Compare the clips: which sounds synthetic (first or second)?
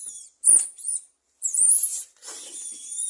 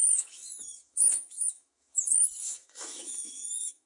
second